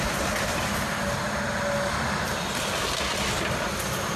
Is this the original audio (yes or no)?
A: yes